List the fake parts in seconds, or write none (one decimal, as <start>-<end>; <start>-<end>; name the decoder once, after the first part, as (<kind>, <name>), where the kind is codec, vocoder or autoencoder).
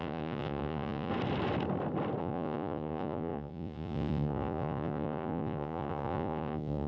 0.0-1.1 (vocoder, Vocos); 2.2-6.9